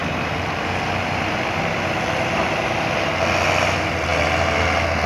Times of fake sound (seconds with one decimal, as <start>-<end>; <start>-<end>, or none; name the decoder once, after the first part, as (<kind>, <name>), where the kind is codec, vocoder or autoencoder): none